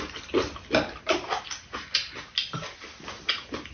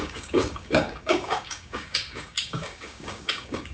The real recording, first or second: first